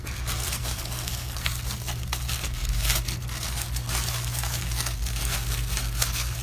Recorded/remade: remade